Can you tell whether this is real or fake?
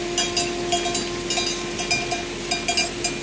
real